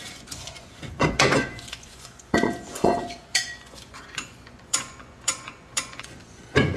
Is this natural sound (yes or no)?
no